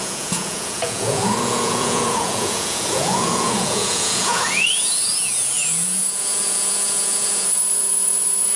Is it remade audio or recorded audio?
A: remade